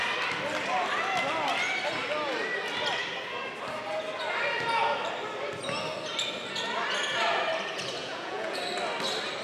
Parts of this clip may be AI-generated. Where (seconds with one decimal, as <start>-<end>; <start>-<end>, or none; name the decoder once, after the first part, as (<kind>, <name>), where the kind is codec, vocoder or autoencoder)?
8.0-8.6 (vocoder, Vocos)